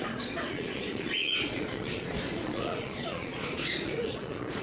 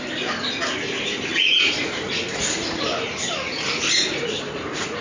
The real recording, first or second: second